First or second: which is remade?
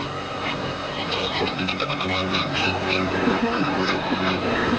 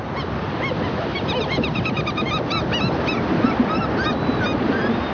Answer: first